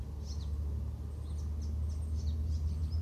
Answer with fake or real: real